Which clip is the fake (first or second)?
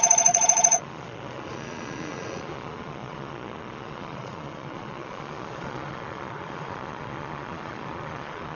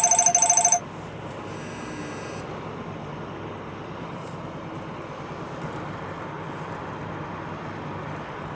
first